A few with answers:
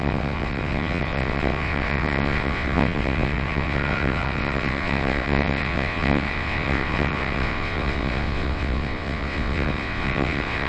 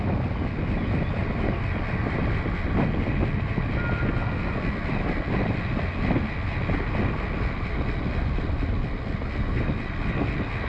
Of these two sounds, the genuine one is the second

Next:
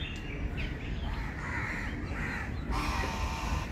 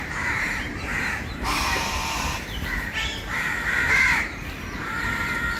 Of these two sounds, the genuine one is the first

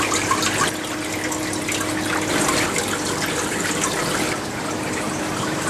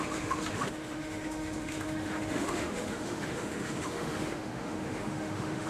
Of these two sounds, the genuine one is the first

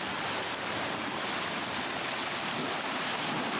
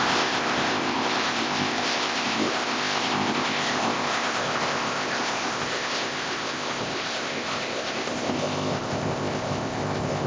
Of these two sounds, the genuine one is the first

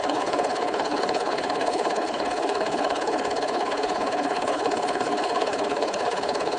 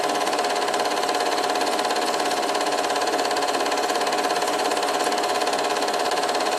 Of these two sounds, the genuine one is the second